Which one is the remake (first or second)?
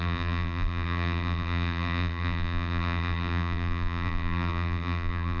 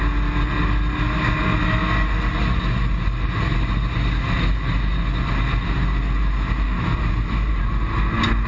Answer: first